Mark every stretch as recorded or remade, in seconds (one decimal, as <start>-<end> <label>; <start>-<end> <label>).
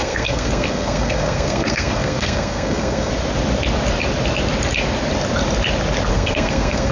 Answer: 0.0-3.1 remade; 3.1-6.1 recorded; 6.1-6.9 remade